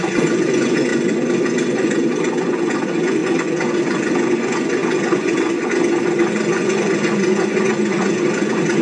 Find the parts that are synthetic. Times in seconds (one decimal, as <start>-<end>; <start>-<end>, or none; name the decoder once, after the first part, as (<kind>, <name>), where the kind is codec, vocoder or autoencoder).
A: 0.0-8.8 (vocoder, Vocos)